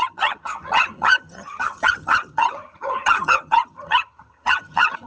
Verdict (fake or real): fake